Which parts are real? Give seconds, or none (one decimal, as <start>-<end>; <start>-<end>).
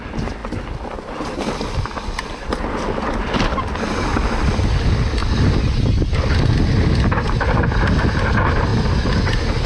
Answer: 0.0-9.7